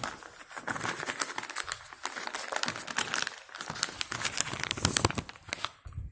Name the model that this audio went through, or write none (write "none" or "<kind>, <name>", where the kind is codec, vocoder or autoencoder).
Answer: none